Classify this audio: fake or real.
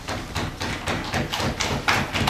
real